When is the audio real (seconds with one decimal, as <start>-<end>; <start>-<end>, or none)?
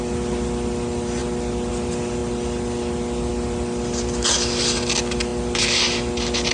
0.0-6.5